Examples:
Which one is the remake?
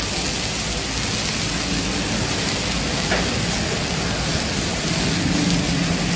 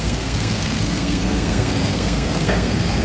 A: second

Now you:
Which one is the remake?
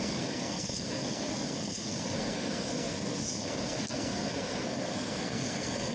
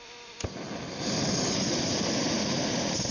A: first